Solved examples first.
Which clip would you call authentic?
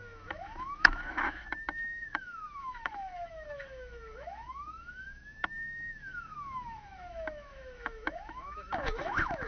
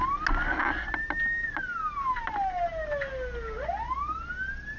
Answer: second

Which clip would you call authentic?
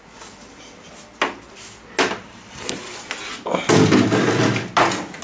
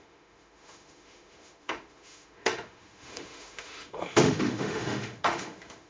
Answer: first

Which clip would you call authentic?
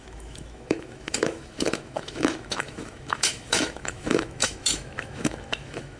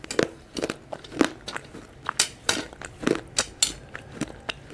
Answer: second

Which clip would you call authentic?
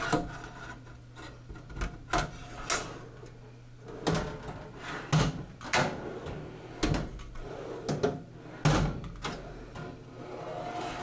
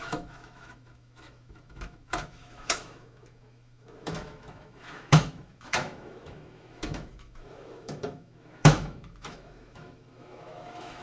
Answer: first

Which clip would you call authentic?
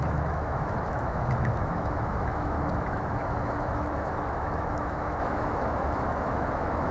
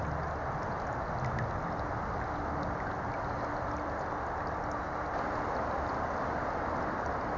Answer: second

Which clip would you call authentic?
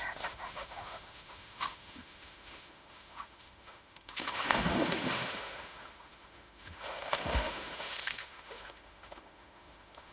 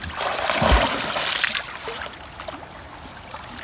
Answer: second